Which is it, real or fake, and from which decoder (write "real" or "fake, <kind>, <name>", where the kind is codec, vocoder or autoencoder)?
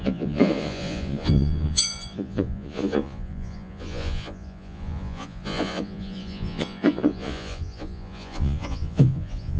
fake, vocoder, Vocos